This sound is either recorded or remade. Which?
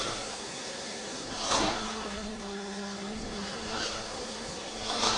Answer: remade